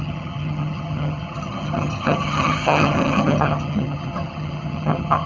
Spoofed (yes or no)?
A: yes